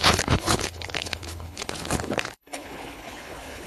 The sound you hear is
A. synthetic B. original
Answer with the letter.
A